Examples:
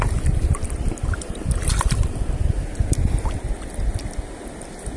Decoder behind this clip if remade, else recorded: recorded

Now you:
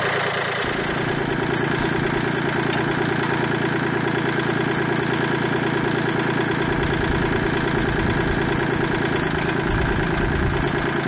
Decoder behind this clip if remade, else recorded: recorded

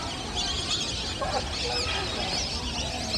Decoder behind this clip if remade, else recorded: recorded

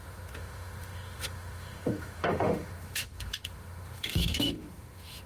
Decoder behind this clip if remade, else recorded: remade, autoencoder, DAC-VAE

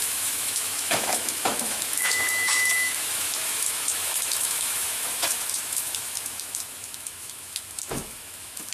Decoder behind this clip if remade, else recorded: remade, autoencoder, DAC-VAE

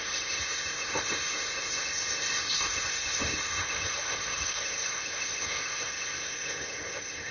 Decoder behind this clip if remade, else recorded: remade, autoencoder, DAC-VAE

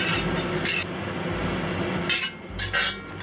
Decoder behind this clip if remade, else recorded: recorded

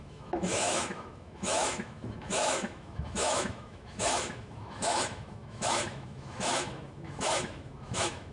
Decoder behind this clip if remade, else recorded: remade, autoencoder, DAC-VAE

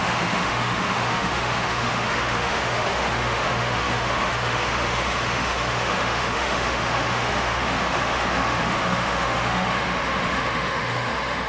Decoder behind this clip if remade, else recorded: remade, autoencoder, DAC-VAE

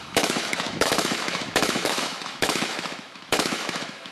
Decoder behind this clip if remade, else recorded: remade, autoencoder, DAC-VAE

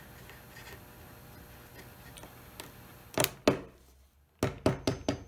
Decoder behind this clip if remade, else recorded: recorded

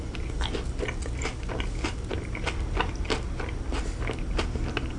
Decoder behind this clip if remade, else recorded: recorded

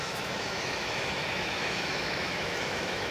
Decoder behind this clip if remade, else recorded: remade, autoencoder, DAC-VAE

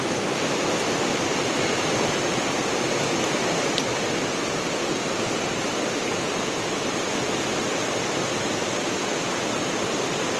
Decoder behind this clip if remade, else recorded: recorded